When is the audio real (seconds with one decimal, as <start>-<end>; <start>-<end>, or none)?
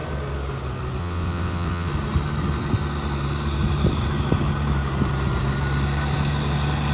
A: 0.0-1.0; 1.9-6.9